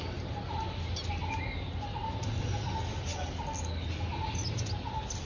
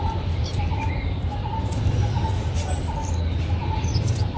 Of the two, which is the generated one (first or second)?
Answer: second